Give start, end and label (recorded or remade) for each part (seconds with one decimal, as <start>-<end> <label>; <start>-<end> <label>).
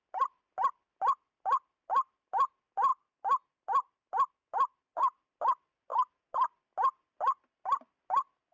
0.0-8.5 recorded